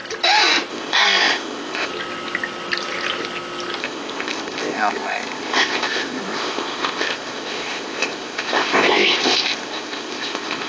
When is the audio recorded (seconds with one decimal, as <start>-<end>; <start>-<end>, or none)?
0.0-0.7; 1.9-3.8

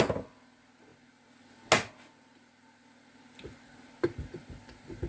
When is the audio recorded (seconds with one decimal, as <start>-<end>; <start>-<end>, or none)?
0.0-5.1